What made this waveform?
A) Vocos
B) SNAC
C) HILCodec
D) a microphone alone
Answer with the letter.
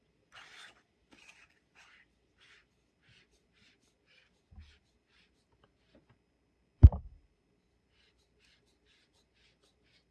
D